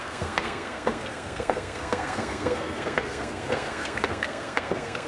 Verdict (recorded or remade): remade